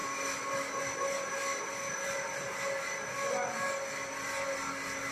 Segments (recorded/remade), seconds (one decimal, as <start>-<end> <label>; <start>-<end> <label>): 0.0-5.1 recorded